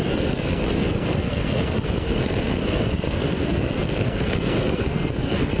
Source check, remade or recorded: remade